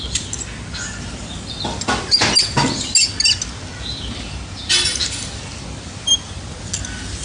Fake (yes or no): no